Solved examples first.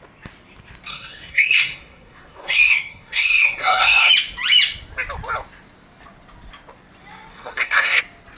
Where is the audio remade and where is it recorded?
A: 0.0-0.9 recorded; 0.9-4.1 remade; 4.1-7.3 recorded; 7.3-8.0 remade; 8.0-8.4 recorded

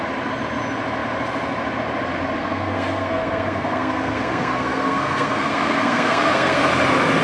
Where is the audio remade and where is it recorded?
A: 0.0-2.4 recorded; 2.4-6.7 remade; 6.7-7.2 recorded

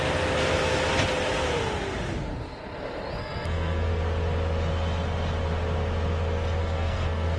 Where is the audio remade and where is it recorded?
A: 0.0-3.2 recorded; 3.2-4.0 remade; 4.0-6.6 recorded; 6.6-7.4 remade

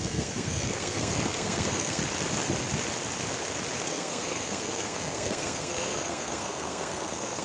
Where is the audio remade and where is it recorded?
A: 0.0-2.0 remade; 2.0-3.9 recorded; 3.9-7.4 remade

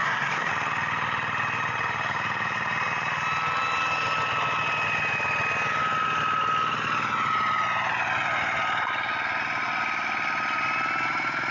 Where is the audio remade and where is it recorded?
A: 0.0-0.5 remade; 0.5-11.5 recorded

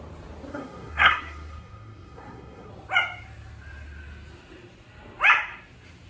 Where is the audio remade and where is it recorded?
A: 0.0-0.5 recorded; 0.5-2.7 remade; 2.7-6.1 recorded